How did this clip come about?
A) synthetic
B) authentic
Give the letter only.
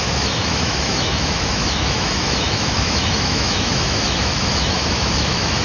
A